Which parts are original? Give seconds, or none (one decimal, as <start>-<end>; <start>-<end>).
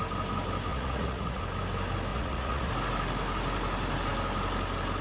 0.0-0.7; 1.4-2.1; 2.7-5.0